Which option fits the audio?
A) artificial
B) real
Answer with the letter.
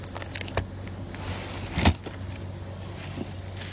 B